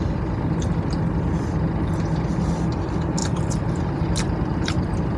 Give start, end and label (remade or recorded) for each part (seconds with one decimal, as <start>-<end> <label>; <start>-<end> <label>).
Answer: 0.0-3.2 recorded; 3.2-4.0 remade; 4.0-4.5 recorded; 4.5-5.2 remade